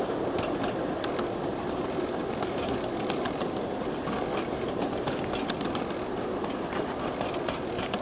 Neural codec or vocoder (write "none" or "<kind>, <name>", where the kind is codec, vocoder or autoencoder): none